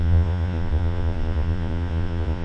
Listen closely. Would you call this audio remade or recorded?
remade